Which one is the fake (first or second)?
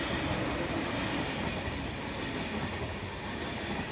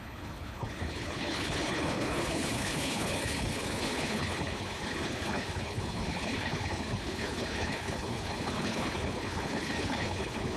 second